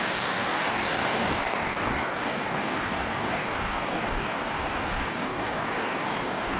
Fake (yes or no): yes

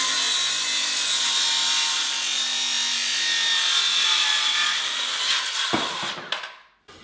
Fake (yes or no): no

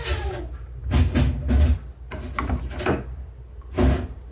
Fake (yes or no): no